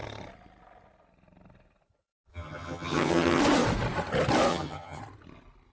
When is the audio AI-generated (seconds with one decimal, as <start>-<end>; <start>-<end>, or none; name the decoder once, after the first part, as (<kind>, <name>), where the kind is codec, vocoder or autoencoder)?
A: 2.3-3.4 (vocoder, HiFi-GAN); 4.5-5.0